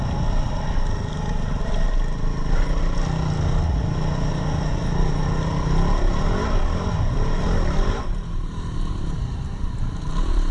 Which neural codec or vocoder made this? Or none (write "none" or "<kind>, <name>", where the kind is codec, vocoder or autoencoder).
none